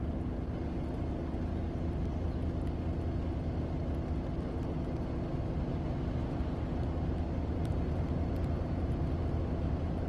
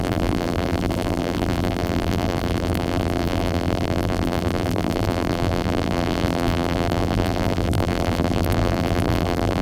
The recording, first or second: first